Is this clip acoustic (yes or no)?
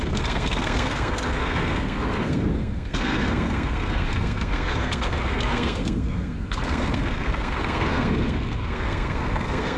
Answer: no